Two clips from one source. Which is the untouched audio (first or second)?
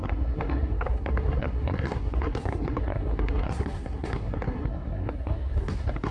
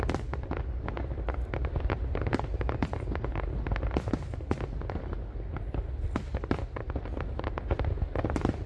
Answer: second